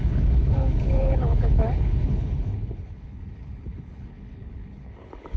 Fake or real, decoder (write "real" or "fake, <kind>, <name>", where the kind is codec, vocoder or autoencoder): fake, codec, HILCodec